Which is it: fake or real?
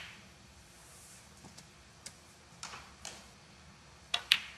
fake